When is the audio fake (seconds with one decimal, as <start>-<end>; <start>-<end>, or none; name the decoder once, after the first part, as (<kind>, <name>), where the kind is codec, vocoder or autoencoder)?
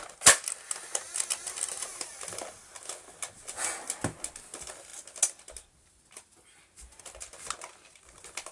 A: none